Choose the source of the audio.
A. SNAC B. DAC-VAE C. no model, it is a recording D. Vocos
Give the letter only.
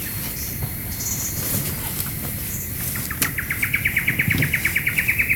C